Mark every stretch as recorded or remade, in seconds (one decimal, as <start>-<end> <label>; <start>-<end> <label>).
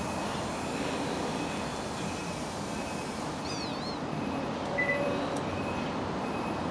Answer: 0.0-6.7 recorded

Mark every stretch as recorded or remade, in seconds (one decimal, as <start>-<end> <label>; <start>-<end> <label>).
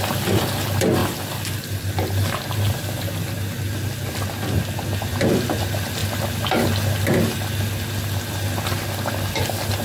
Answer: 0.0-9.8 recorded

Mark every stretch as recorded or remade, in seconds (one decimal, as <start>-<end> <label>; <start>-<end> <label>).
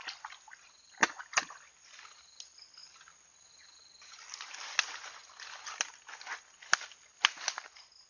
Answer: 0.0-8.1 recorded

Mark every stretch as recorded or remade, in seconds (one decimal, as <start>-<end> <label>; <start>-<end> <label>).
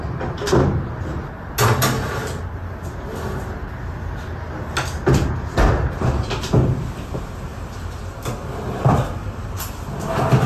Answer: 0.0-10.5 recorded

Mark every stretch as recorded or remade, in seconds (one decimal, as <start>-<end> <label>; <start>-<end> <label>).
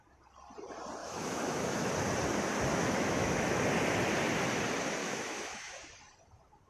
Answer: 0.0-1.0 recorded; 1.0-1.9 remade; 1.9-2.7 recorded; 2.7-3.6 remade; 3.6-5.0 recorded; 5.0-5.7 remade; 5.7-6.7 recorded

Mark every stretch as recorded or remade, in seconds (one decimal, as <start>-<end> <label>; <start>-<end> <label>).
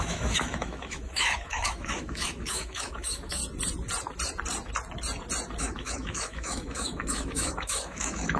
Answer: 0.0-3.4 remade; 3.4-5.6 recorded; 5.6-8.4 remade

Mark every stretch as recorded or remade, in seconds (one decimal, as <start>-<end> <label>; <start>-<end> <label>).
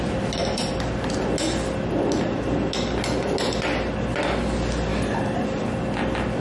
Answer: 0.0-6.4 recorded